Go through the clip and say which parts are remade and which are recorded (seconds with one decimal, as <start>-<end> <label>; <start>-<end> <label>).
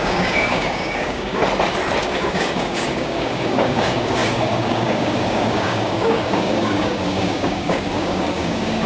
0.0-1.4 remade; 1.4-2.0 recorded; 2.0-8.9 remade